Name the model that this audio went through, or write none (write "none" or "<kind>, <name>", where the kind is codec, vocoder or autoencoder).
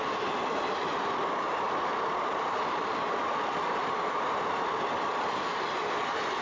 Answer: none